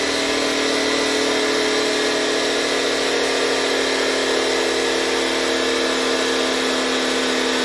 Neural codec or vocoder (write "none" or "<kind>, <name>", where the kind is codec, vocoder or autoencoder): none